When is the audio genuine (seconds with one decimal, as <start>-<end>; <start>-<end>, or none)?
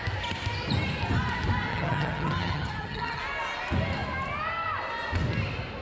0.0-1.7; 3.2-5.8